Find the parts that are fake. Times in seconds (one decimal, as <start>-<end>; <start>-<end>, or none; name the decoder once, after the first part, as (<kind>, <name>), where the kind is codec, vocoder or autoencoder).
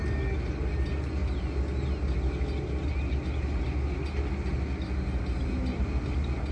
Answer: none